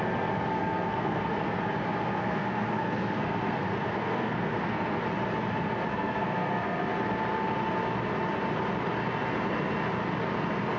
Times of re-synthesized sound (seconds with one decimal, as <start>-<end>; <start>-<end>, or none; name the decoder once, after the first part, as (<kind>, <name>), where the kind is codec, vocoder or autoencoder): 0.5-1.3 (codec, SNAC); 2.2-5.0; 5.9-6.8